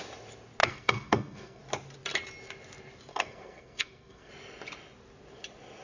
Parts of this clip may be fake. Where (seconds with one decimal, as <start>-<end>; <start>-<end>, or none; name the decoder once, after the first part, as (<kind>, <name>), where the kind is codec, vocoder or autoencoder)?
0.6-1.6 (codec, SNAC); 3.1-4.3